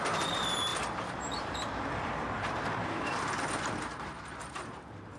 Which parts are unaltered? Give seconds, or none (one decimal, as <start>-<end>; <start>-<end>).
none